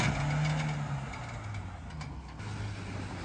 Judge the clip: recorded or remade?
recorded